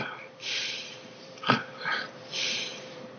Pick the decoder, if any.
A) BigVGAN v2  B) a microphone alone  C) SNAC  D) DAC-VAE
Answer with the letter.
A